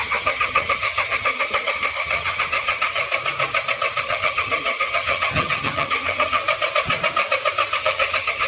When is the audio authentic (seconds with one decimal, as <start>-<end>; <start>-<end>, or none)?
3.0-4.0; 6.4-7.8